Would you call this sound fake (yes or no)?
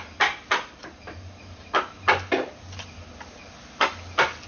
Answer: no